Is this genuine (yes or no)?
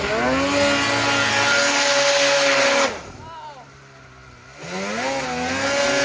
yes